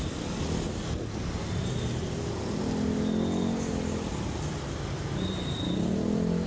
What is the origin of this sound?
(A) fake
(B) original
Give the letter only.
B